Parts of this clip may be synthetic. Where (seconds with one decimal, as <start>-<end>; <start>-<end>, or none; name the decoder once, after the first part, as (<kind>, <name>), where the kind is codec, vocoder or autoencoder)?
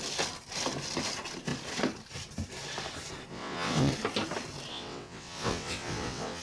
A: 3.3-3.9 (vocoder, WaveNeXt); 4.7-6.4